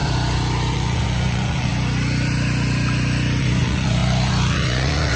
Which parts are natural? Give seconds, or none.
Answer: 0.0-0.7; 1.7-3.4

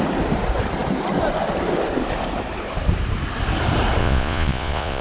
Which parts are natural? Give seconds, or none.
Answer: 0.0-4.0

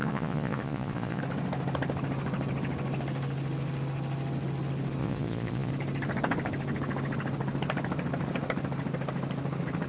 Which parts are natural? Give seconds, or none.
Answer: 1.2-5.0; 5.7-9.9

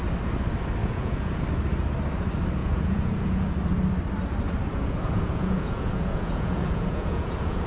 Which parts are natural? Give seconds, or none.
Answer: 0.0-0.8; 1.4-2.6; 3.5-4.7